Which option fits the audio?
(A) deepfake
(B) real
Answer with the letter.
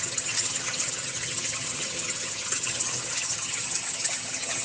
A